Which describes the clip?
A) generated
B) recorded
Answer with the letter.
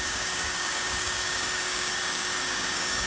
A